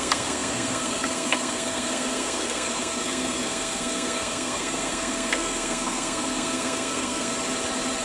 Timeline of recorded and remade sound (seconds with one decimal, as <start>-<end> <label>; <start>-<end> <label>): 0.0-7.3 remade; 7.3-8.0 recorded